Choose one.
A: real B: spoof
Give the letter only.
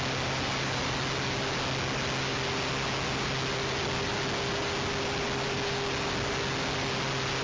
A